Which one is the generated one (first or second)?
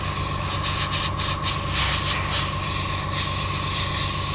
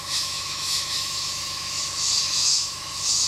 second